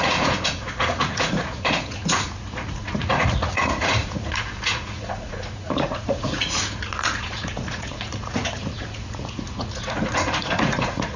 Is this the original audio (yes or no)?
no